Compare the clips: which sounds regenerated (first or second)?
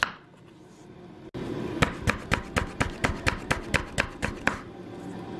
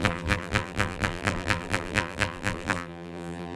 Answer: second